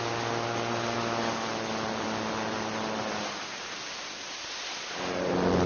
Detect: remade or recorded recorded